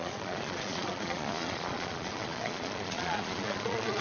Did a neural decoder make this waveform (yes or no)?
yes